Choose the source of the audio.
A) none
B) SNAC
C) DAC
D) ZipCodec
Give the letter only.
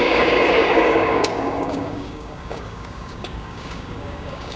C